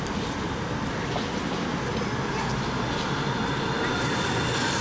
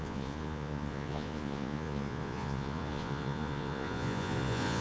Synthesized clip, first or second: second